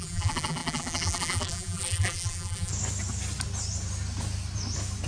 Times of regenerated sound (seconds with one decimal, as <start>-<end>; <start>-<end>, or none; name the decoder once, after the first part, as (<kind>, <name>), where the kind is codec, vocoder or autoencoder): 0.0-2.7 (vocoder, BigVGAN v2)